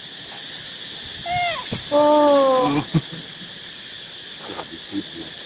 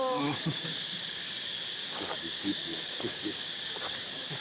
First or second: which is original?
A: first